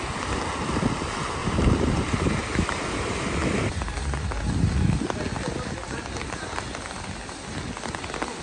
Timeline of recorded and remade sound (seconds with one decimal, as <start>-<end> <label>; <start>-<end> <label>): 0.0-1.4 recorded; 1.4-2.4 remade; 2.4-8.4 recorded